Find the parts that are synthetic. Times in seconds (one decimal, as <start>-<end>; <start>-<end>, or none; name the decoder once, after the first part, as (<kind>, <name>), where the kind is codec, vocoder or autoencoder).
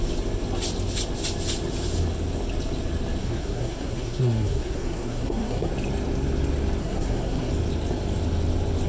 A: 3.2-5.7 (codec, SNAC); 6.8-7.5